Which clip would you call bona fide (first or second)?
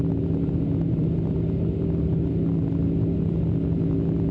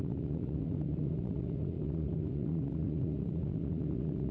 first